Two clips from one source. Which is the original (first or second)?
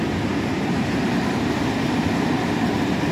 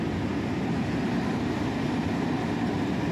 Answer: second